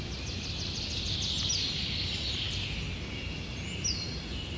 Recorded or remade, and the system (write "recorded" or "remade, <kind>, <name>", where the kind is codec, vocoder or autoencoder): recorded